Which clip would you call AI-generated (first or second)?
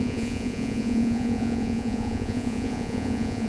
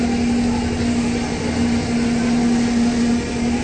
first